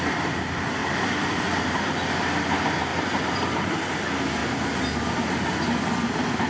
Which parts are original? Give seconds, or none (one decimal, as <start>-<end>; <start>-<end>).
0.0-0.8; 1.9-2.9; 3.7-4.4; 5.0-6.5